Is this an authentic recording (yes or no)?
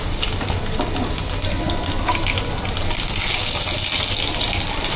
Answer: yes